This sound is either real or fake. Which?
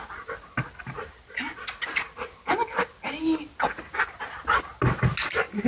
real